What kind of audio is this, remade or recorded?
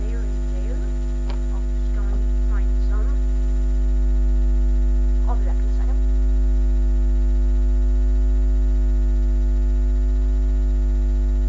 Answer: recorded